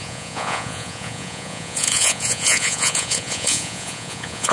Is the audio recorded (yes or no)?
no